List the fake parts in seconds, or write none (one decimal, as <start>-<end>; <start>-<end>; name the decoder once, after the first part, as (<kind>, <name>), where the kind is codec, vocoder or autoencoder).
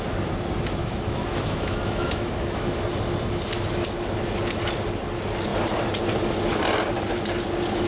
0.8-2.8 (autoencoder, DAC-VAE)